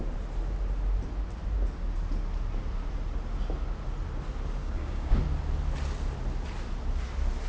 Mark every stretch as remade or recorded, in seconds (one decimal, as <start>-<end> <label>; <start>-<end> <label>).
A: 0.0-4.6 recorded; 4.6-5.2 remade; 5.2-7.5 recorded

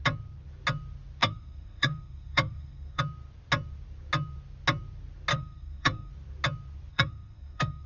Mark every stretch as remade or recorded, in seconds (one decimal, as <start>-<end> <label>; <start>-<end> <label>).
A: 0.0-1.2 recorded; 1.2-3.0 remade; 3.0-5.3 recorded; 5.3-6.1 remade; 6.1-6.9 recorded; 6.9-7.9 remade

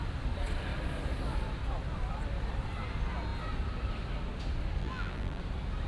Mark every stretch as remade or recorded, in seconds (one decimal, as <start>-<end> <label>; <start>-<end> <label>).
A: 0.0-4.8 recorded; 4.8-5.4 remade; 5.4-5.9 recorded

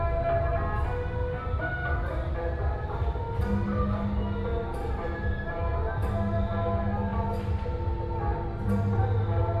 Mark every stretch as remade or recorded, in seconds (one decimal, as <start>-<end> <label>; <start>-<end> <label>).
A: 0.0-9.6 recorded

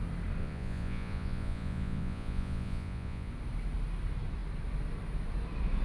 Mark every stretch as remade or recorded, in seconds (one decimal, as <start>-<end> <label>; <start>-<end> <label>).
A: 0.0-0.4 recorded; 0.4-3.3 remade; 3.3-5.8 recorded

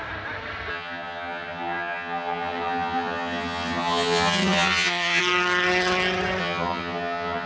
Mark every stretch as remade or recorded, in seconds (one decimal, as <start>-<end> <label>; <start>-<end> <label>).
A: 0.0-0.7 recorded; 0.7-5.2 remade; 5.2-6.4 recorded; 6.4-7.5 remade

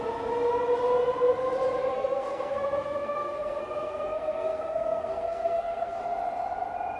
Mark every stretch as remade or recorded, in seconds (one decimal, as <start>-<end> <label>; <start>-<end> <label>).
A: 0.0-1.9 recorded; 1.9-6.0 remade; 6.0-7.0 recorded

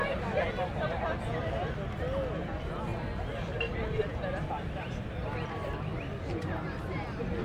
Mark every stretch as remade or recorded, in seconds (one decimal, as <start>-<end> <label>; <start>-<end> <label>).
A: 0.0-7.4 recorded